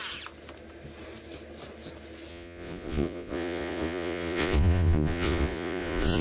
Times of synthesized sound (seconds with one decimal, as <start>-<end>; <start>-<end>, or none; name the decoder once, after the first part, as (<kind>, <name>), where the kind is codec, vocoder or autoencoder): 2.3-6.2 (vocoder, Vocos)